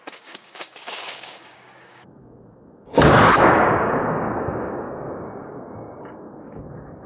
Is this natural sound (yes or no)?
no